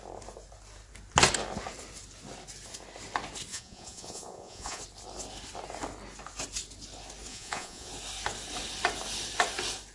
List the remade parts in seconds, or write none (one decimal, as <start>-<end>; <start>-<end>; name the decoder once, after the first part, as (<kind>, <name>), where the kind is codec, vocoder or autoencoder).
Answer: 3.5-4.8 (vocoder, Vocos); 7.3-7.9